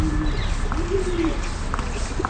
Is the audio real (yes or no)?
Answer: yes